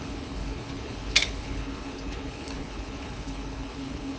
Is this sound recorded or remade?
remade